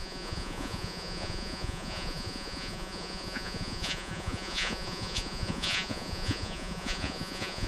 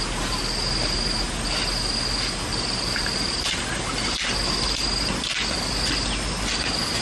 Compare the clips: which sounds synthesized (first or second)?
first